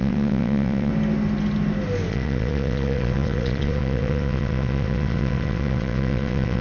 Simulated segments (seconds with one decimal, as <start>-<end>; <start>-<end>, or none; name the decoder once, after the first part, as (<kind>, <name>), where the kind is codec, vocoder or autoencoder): 0.0-0.9 (vocoder, WaveNeXt); 2.1-6.6